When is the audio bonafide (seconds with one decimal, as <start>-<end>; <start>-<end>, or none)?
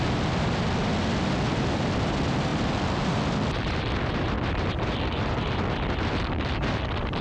0.0-7.2